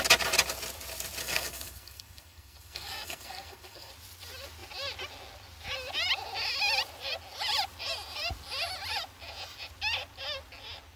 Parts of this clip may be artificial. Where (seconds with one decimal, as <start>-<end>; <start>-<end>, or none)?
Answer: 1.2-3.9